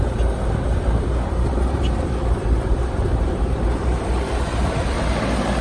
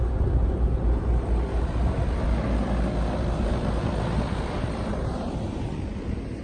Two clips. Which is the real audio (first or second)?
second